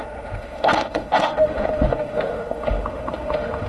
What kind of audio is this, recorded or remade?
remade